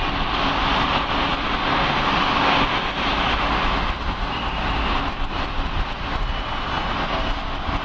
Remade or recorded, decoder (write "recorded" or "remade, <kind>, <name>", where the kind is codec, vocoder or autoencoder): recorded